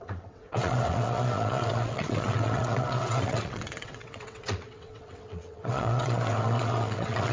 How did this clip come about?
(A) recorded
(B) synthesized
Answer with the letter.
B